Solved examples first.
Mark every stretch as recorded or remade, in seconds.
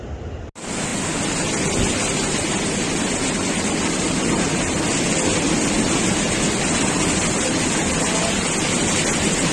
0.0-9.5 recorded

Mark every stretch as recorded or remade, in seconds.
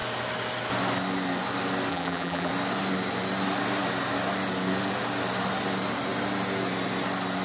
0.0-1.9 recorded; 1.9-2.5 remade; 2.5-7.4 recorded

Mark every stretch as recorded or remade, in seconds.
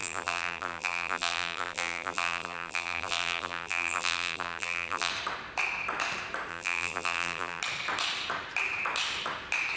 0.0-5.1 remade; 5.1-6.5 recorded; 6.5-7.6 remade; 7.6-9.8 recorded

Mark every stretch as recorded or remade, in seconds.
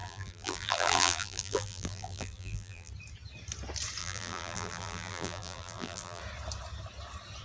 0.0-2.9 remade; 2.9-4.0 recorded; 4.0-6.2 remade; 6.2-7.4 recorded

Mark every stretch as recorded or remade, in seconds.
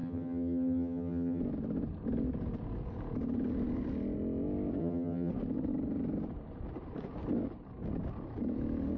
0.0-1.4 remade; 1.4-4.8 recorded; 4.8-5.3 remade; 5.3-9.0 recorded